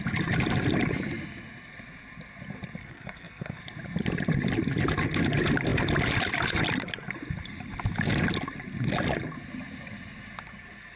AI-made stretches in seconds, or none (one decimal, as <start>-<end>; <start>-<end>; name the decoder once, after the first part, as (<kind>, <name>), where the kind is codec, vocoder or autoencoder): 2.8-3.6 (codec, SNAC)